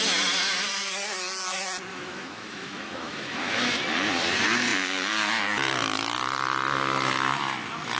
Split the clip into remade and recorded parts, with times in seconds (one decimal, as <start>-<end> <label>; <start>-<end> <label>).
0.0-1.9 recorded; 1.9-3.5 remade; 3.5-8.0 recorded